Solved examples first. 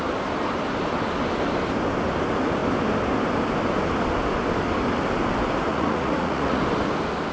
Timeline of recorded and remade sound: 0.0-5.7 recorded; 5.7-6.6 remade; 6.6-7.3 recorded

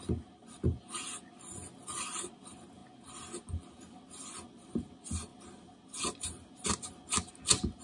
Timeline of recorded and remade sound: 0.0-7.8 recorded